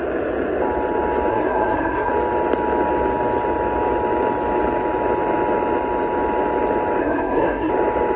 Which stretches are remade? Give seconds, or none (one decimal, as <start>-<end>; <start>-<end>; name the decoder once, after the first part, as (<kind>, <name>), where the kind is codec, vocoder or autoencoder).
1.3-2.1 (codec, SNAC); 7.0-7.7

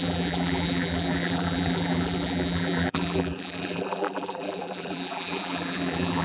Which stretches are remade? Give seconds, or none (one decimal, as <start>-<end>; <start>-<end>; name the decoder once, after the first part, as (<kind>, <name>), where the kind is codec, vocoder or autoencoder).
0.0-6.2 (vocoder, BigVGAN v2)

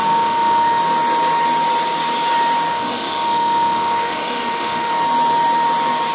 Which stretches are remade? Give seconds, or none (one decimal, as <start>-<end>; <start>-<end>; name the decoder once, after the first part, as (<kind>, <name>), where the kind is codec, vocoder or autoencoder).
0.0-0.8 (autoencoder, DAC-VAE); 2.7-4.9

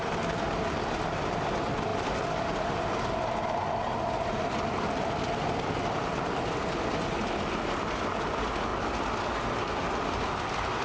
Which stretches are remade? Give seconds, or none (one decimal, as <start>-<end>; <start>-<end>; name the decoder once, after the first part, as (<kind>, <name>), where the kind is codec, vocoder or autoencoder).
none

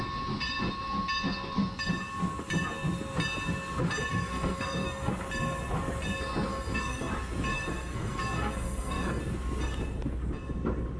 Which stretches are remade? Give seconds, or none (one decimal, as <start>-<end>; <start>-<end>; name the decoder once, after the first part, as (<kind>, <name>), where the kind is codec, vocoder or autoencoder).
4.1-5.1 (codec, SNAC); 6.5-7.1; 7.5-9.2

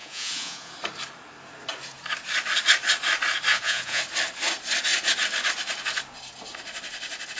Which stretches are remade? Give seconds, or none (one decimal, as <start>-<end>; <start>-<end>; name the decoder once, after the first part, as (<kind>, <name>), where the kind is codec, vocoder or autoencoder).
0.0-0.7 (vocoder, Vocos); 3.5-4.0

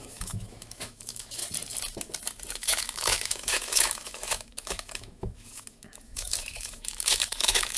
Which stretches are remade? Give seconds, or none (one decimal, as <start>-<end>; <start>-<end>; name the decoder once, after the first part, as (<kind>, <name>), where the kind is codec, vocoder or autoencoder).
0.0-1.4 (autoencoder, DAC-VAE); 2.5-7.8

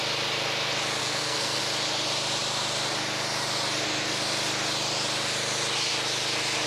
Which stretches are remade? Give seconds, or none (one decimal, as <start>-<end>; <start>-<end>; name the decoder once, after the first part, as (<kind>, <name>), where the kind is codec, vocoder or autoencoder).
1.0-1.6 (codec, SNAC)